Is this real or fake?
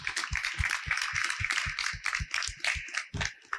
real